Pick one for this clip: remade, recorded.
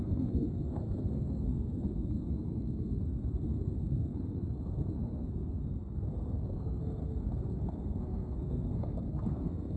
remade